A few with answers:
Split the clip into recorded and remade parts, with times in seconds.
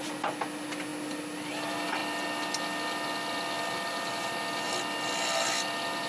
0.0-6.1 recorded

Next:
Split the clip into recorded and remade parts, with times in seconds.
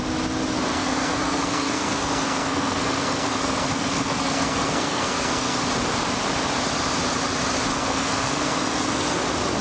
0.0-0.7 recorded; 0.7-5.6 remade; 5.6-7.7 recorded; 7.7-9.2 remade; 9.2-9.6 recorded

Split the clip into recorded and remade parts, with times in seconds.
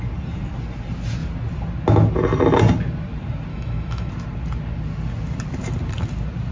0.0-3.5 recorded; 3.5-4.1 remade; 4.1-6.5 recorded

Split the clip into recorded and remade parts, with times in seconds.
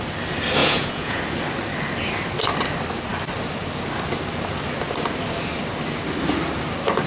0.0-0.6 recorded; 0.6-1.2 remade; 1.2-7.1 recorded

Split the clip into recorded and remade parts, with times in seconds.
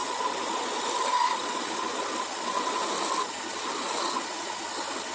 0.0-5.1 recorded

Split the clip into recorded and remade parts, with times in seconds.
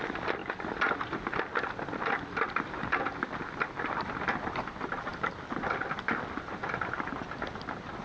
0.0-8.0 recorded